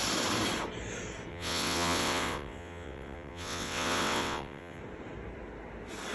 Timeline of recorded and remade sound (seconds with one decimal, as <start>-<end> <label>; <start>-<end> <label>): 0.0-1.3 recorded; 1.3-4.8 remade; 4.8-6.1 recorded